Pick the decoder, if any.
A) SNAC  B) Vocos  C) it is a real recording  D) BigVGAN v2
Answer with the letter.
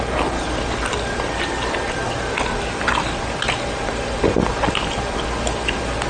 C